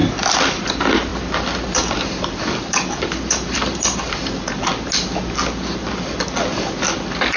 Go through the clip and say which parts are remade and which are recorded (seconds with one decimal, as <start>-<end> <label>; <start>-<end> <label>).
0.0-0.6 remade; 0.6-1.1 recorded; 1.1-4.5 remade; 4.5-7.4 recorded